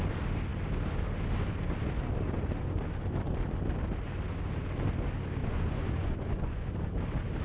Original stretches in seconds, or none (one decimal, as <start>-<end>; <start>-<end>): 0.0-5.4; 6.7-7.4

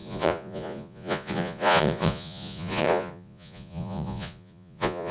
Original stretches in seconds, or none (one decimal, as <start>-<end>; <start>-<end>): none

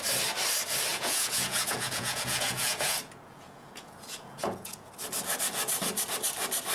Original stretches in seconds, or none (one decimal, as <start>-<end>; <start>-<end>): 0.0-0.9; 4.9-6.7

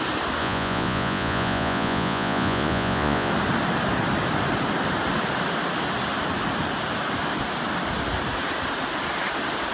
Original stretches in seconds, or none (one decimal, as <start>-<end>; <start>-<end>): 0.0-0.4; 3.3-9.7